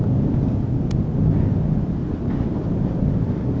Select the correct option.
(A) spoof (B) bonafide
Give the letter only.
B